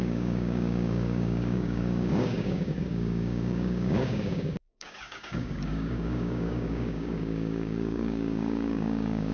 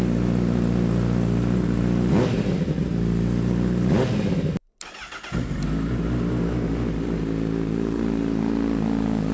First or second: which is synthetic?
first